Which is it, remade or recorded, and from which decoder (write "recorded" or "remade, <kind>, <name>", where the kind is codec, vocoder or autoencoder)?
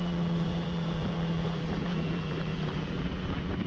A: remade, vocoder, BigVGAN v2